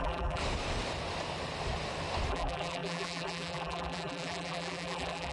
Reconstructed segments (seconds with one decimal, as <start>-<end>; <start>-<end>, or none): 0.0-0.4; 2.3-5.3